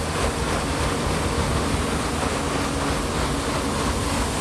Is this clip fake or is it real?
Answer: real